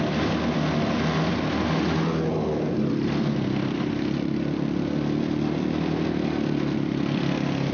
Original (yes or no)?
yes